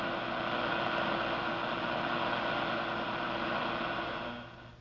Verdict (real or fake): real